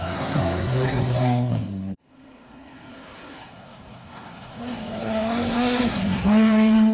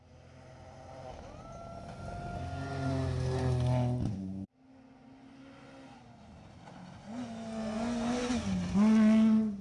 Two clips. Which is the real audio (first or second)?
second